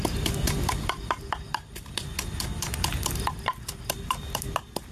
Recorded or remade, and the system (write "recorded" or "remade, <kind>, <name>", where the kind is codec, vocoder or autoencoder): recorded